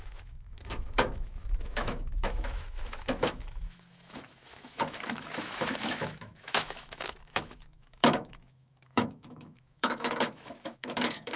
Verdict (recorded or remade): remade